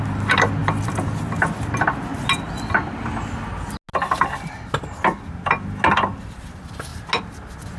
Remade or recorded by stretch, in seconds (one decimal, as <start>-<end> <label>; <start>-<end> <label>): 0.0-0.6 recorded; 0.6-1.2 remade; 1.2-7.8 recorded